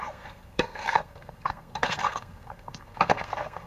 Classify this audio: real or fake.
fake